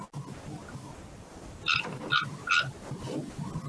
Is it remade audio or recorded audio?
recorded